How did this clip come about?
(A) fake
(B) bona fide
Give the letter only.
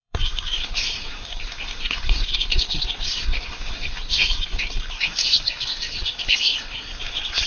A